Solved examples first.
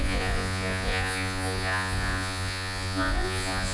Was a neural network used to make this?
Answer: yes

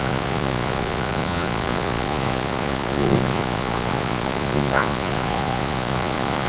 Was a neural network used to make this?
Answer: yes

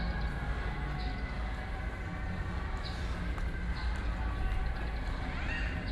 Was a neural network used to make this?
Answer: no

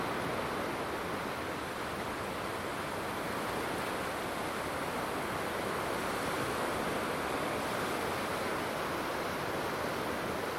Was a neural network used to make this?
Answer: no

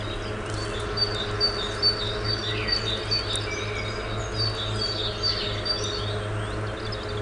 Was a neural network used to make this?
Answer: no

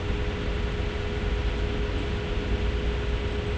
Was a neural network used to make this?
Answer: no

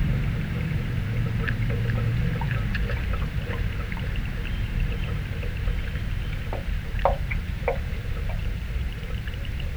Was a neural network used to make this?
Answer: yes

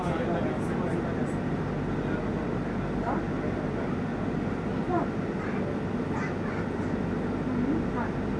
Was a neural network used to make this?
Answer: no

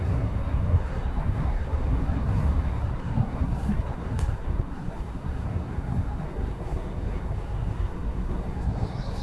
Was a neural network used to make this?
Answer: yes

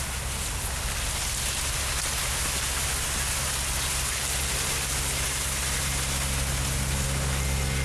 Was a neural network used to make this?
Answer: no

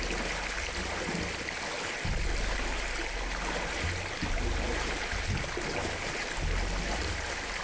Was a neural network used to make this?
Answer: no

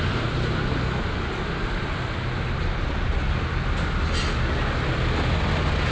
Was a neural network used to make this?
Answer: no